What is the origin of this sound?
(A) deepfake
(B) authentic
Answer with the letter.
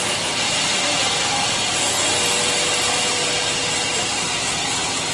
B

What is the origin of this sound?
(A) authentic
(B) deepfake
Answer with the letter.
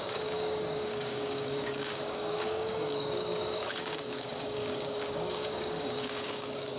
B